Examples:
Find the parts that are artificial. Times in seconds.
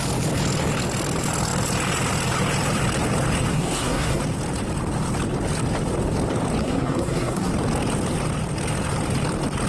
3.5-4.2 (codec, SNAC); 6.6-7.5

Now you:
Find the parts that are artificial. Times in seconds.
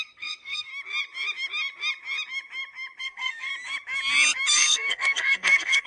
0.0-0.7 (codec, SNAC); 3.0-3.5; 4.5-5.9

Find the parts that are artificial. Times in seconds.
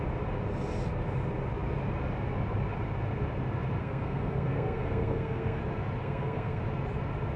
3.8-5.6 (codec, SNAC); 6.0-6.6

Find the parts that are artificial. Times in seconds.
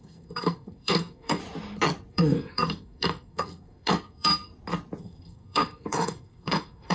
0.0-1.4 (codec, SNAC); 2.1-4.5; 5.0-6.9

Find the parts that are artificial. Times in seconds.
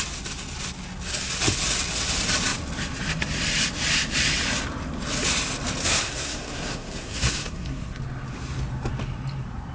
5.8-8.0 (codec, SNAC)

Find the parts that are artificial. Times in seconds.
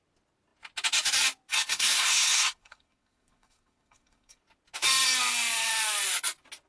1.5-4.4 (codec, SNAC)